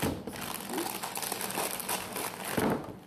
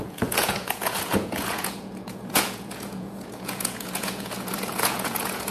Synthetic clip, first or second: second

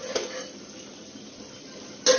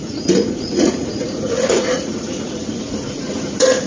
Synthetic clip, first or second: second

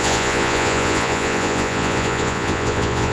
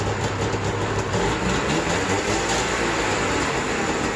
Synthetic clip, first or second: first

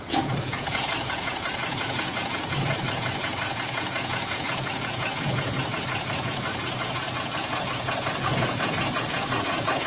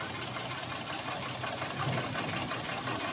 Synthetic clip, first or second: first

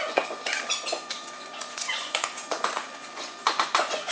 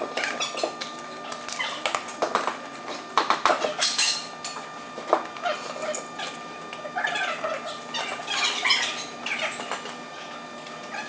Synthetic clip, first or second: first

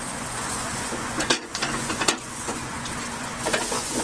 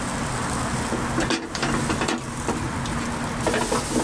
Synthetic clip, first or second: first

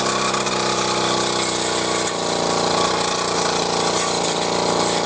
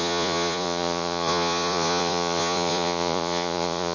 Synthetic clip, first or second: second